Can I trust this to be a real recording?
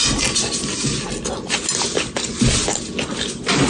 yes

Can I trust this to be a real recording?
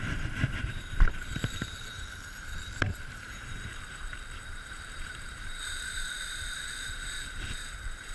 no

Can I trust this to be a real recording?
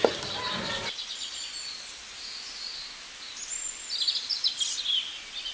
yes